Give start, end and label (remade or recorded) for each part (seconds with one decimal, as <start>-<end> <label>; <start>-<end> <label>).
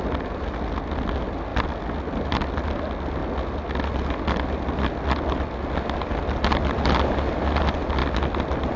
0.0-8.8 recorded